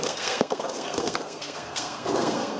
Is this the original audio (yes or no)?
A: no